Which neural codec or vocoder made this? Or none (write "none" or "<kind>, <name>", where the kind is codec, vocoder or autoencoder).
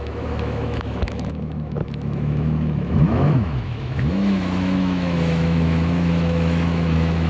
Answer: autoencoder, DAC-VAE